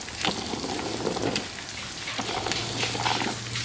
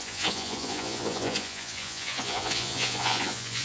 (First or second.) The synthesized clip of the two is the second